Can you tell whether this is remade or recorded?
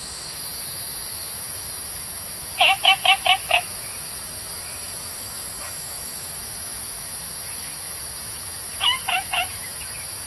remade